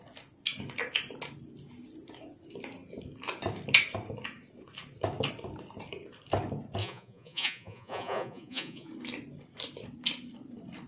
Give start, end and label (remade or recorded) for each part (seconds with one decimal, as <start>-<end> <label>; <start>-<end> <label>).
0.0-6.8 recorded; 6.8-8.9 remade; 8.9-10.9 recorded